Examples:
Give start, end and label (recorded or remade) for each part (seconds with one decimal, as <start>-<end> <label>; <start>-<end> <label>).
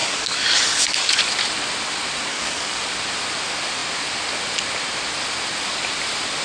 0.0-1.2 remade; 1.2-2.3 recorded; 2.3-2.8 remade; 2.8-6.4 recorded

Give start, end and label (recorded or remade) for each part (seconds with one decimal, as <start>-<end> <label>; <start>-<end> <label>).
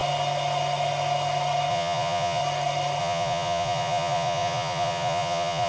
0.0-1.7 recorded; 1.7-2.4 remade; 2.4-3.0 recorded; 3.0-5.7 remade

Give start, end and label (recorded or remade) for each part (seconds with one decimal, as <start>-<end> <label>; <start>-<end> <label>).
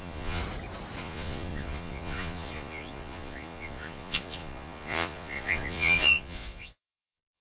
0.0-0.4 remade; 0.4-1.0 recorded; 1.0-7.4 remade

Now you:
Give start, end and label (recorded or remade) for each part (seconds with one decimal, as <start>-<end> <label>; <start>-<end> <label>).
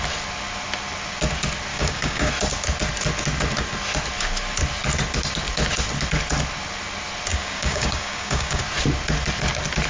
0.0-1.7 recorded; 1.7-2.3 remade; 2.3-7.3 recorded; 7.3-8.6 remade; 8.6-9.9 recorded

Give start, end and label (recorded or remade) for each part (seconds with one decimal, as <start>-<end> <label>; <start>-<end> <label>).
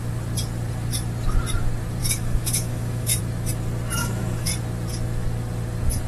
0.0-2.0 recorded; 2.0-3.2 remade; 3.2-4.0 recorded; 4.0-4.5 remade; 4.5-6.1 recorded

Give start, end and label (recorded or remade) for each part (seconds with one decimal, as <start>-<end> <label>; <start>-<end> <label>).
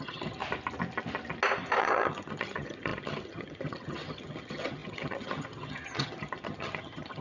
0.0-0.4 remade; 0.4-1.8 recorded; 1.8-7.2 remade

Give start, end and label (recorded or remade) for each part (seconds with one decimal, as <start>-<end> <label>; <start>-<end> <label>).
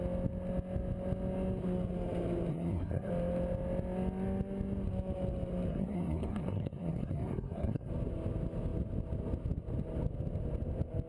0.0-2.5 recorded; 2.5-3.1 remade; 3.1-5.7 recorded; 5.7-7.9 remade; 7.9-11.1 recorded